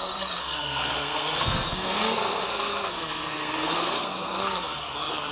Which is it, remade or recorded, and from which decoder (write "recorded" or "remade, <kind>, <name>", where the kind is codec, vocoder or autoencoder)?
remade, codec, SNAC